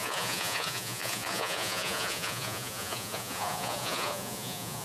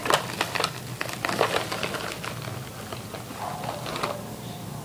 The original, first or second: second